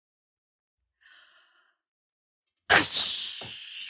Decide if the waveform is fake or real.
real